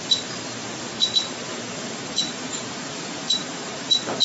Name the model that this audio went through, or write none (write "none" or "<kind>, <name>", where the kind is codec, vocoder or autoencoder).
vocoder, BigVGAN v2